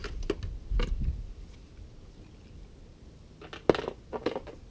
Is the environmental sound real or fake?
real